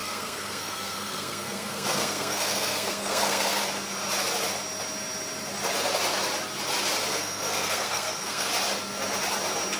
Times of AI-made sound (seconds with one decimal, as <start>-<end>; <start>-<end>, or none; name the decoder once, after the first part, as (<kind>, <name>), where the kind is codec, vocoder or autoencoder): 0.0-3.6 (codec, SNAC); 7.1-8.5